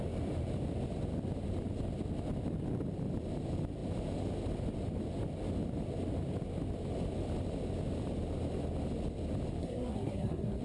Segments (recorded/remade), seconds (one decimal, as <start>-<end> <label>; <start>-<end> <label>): 0.0-9.6 recorded; 9.6-10.6 remade